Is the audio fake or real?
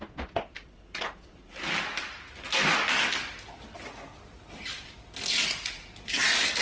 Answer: real